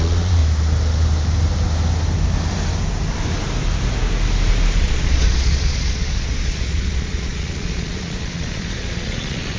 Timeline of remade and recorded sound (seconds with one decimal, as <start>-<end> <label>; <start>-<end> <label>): 0.0-0.4 remade; 0.4-4.8 recorded; 4.8-9.6 remade